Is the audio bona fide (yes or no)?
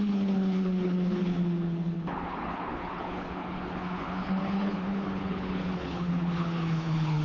no